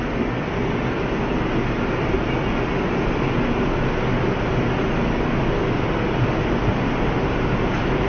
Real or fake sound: real